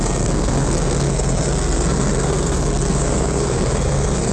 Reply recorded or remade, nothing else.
remade